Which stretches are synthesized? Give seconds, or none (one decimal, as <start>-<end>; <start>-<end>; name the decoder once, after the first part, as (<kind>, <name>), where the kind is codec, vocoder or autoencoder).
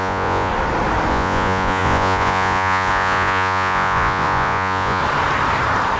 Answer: 0.0-0.5 (vocoder, Vocos); 1.1-5.0